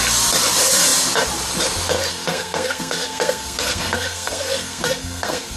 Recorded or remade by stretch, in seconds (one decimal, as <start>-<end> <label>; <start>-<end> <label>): 0.0-2.1 recorded; 2.1-5.6 remade